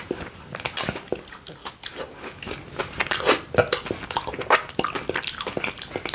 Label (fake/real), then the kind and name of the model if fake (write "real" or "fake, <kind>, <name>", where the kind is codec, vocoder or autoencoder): real